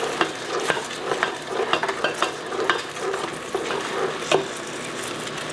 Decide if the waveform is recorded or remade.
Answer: recorded